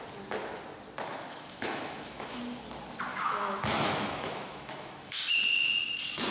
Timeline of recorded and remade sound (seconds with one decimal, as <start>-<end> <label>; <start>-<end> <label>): 0.0-1.1 recorded; 1.1-2.4 remade; 2.4-3.1 recorded; 3.1-5.2 remade; 5.2-6.3 recorded